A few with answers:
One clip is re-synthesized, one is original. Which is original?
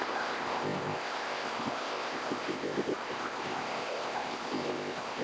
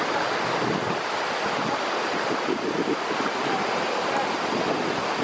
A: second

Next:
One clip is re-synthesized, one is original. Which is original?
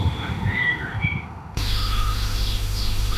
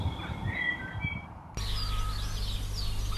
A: second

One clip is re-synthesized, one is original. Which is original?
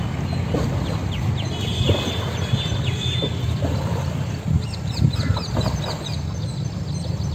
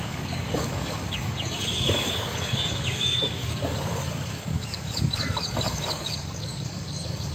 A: first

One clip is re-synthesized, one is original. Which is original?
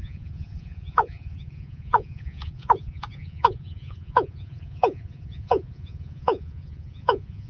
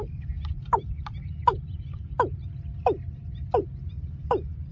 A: second